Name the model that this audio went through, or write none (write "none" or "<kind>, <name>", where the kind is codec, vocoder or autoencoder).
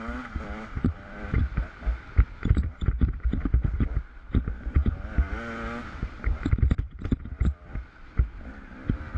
vocoder, BigVGAN v2